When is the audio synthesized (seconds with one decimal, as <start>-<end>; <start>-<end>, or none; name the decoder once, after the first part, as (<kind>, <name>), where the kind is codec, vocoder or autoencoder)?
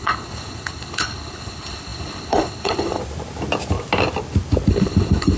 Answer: 0.0-3.0 (codec, HILCodec); 4.7-5.4